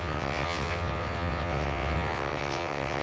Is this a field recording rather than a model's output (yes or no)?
no